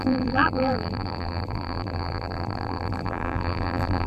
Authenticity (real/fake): fake